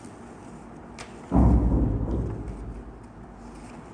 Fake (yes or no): no